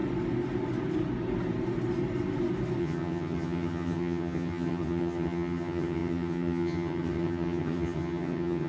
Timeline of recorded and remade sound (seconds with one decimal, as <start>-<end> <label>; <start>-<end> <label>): 0.0-2.8 recorded; 2.8-8.7 remade